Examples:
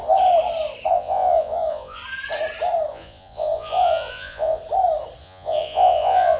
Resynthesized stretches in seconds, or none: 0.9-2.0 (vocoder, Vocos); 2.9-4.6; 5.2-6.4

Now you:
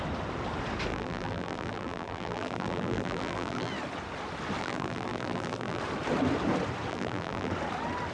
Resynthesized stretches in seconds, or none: 0.9-3.7 (vocoder, BigVGAN v2); 4.6-5.8; 6.9-7.5

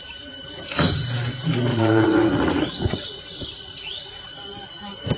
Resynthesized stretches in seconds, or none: 1.7-4.0 (vocoder, Vocos)

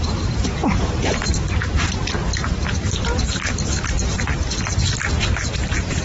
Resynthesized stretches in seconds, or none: 0.0-0.6 (vocoder, BigVGAN v2); 1.8-4.3; 5.3-6.0

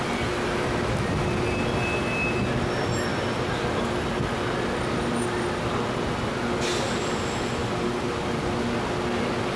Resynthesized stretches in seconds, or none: none

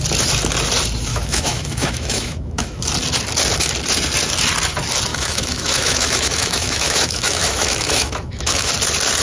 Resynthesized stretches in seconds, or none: 1.1-2.8 (autoencoder, DAC-VAE); 5.1-8.7